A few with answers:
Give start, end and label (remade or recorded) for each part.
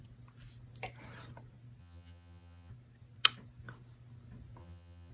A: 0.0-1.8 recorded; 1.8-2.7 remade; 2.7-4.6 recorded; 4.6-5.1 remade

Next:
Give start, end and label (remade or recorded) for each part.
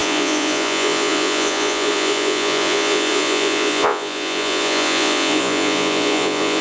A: 0.0-6.6 remade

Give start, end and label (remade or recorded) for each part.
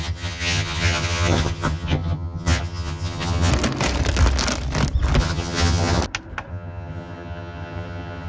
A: 0.0-3.5 remade; 3.5-5.2 recorded; 5.2-6.0 remade; 6.0-6.5 recorded; 6.5-8.3 remade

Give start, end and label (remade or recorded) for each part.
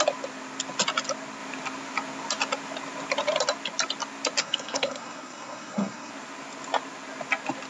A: 0.0-4.4 recorded; 4.4-6.1 remade; 6.1-7.7 recorded